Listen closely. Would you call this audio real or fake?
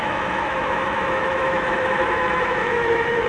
fake